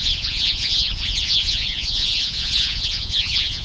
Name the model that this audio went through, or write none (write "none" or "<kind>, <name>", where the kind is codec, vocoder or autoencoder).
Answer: vocoder, Vocos